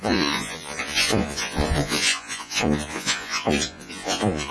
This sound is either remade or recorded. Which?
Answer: remade